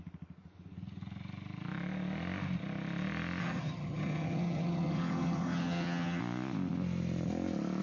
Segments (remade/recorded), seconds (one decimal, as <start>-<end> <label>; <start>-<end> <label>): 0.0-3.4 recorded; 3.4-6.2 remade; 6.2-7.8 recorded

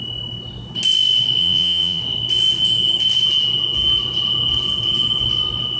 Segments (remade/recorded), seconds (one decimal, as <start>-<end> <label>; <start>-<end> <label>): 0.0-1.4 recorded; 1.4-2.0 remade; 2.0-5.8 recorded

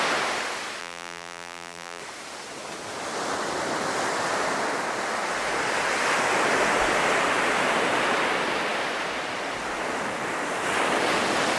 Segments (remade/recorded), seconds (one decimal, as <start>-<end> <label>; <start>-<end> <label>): 0.0-0.8 recorded; 0.8-2.0 remade; 2.0-11.6 recorded

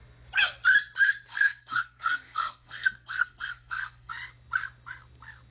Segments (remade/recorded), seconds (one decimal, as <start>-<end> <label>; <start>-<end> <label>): 0.0-1.3 recorded; 1.3-4.1 remade; 4.1-5.5 recorded

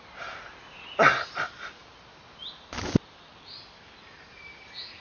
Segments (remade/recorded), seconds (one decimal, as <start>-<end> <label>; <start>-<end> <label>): 0.0-5.0 recorded

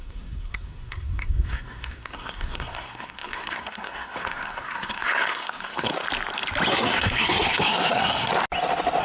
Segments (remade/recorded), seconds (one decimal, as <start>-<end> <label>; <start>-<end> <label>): 0.0-5.9 remade; 5.9-6.7 recorded; 6.7-8.3 remade; 8.3-9.0 recorded